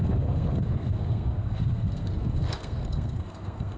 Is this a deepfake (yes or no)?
yes